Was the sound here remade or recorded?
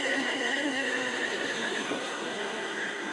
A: remade